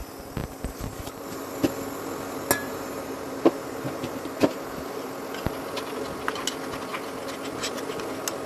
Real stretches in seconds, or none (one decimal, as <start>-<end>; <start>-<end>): 0.0-0.4; 1.5-2.6; 5.1-8.5